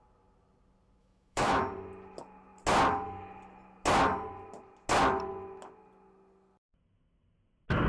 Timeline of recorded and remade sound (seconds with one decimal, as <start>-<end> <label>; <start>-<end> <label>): 0.0-1.0 recorded; 1.0-1.6 remade; 1.6-7.9 recorded